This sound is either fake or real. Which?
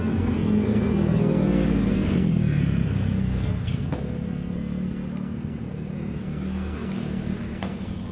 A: fake